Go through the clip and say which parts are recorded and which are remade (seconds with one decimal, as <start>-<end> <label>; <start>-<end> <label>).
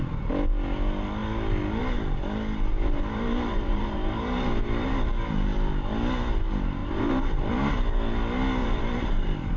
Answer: 0.0-2.7 recorded; 2.7-5.1 remade; 5.1-6.8 recorded; 6.8-7.5 remade; 7.5-8.6 recorded; 8.6-9.6 remade